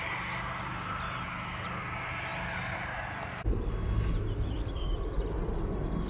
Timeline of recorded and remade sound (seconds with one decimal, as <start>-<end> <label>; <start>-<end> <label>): 0.0-6.1 recorded